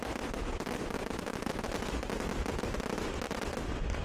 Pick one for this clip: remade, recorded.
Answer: recorded